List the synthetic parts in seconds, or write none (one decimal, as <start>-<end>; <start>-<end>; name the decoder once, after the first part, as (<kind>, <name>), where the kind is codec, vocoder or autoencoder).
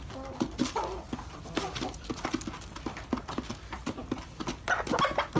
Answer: none